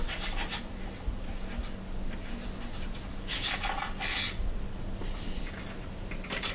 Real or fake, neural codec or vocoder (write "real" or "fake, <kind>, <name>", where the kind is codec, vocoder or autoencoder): real